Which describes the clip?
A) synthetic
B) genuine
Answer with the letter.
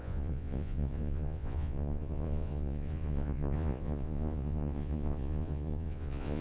A